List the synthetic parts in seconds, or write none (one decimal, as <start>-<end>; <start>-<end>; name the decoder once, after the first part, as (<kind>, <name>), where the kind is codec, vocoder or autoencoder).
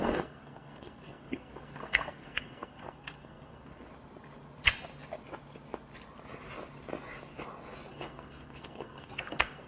0.0-3.9 (codec, SNAC); 7.9-9.7